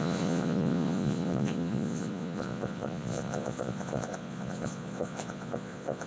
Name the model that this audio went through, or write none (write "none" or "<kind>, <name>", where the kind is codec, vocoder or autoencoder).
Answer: vocoder, Vocos